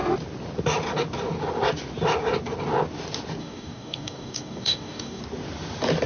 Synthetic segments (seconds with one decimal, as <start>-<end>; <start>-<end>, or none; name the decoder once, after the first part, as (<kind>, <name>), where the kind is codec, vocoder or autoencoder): 3.4-5.2 (codec, DAC)